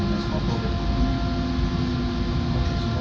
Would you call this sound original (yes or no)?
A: yes